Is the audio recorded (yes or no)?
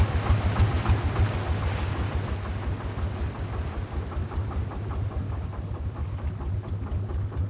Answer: yes